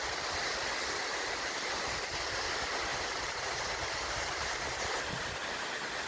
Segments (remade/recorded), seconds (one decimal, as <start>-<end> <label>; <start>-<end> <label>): 0.0-1.1 recorded; 1.1-2.2 remade; 2.2-2.9 recorded; 2.9-4.4 remade; 4.4-6.1 recorded